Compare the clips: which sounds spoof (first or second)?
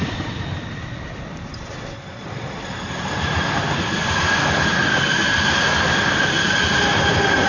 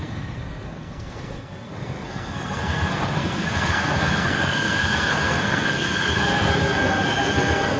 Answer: second